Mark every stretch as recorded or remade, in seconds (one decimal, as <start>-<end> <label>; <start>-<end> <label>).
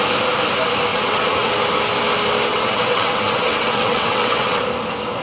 0.0-0.9 recorded; 0.9-1.5 remade; 1.5-2.5 recorded; 2.5-4.6 remade; 4.6-5.2 recorded